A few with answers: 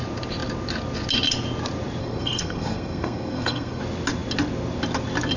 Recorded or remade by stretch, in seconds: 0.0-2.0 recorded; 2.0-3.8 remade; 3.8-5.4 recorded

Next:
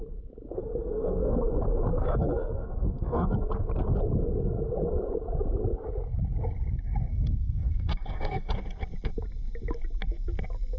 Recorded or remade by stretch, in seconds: 0.0-0.6 recorded; 0.6-1.5 remade; 1.5-1.9 recorded; 1.9-3.5 remade; 3.5-7.1 recorded; 7.1-8.5 remade; 8.5-10.8 recorded

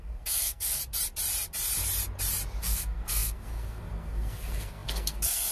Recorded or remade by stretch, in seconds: 0.0-0.8 remade; 0.8-2.6 recorded; 2.6-5.5 remade